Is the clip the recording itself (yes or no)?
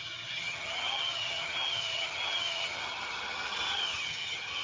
no